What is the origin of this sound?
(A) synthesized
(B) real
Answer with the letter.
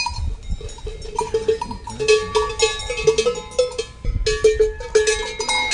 B